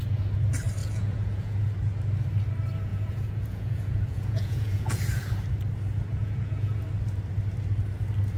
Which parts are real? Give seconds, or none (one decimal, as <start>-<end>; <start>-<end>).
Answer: 0.0-0.8; 1.7-2.9; 5.0-6.1; 6.8-8.4